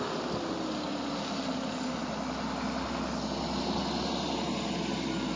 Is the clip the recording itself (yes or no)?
yes